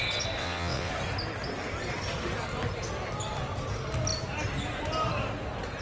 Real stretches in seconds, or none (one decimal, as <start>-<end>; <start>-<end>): 0.0-0.4; 0.9-5.8